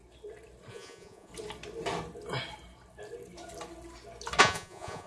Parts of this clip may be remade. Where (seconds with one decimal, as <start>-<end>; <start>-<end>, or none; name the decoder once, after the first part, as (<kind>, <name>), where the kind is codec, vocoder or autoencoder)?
0.7-1.3 (vocoder, Vocos); 4.4-5.1